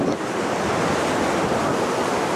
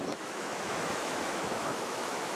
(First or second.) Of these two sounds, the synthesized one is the second